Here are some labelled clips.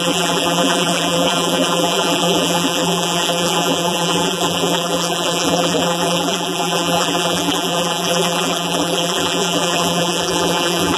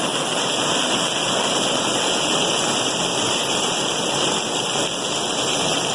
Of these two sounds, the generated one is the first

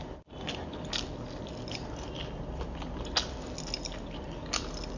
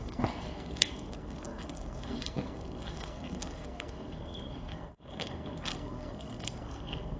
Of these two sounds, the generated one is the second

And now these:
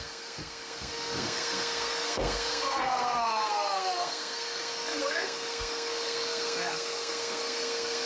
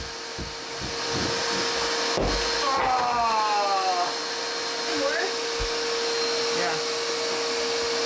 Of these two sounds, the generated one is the first